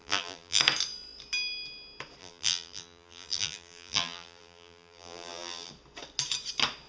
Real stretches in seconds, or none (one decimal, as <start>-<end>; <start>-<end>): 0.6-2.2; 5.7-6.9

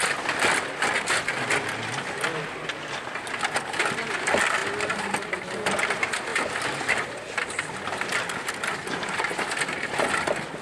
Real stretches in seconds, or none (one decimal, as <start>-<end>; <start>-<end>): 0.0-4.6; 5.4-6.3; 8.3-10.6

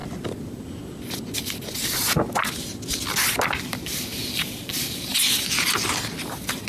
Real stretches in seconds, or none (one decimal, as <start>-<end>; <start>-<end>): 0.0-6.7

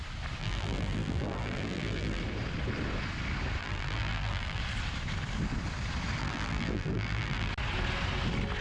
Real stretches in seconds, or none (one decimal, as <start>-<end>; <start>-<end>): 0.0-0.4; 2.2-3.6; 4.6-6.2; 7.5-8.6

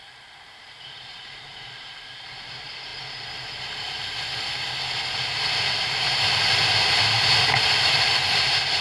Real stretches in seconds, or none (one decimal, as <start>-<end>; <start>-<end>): 2.9-7.5

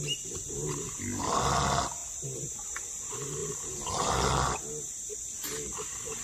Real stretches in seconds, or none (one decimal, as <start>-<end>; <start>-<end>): 0.0-6.2

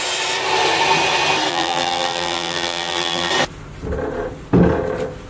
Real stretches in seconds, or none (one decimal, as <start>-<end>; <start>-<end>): 0.0-1.5; 3.3-5.3

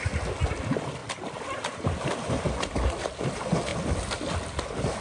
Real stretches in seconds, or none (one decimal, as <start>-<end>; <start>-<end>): 0.0-1.0; 2.7-5.0